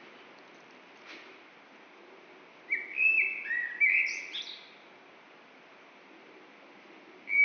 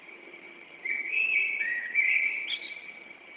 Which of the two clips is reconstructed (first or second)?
second